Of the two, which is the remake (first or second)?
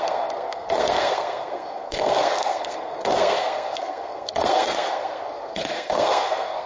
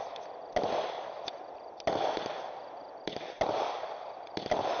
first